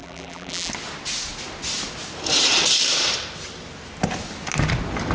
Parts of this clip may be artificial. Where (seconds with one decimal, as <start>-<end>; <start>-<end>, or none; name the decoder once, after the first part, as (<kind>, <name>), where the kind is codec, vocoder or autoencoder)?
0.0-0.7 (vocoder, BigVGAN v2)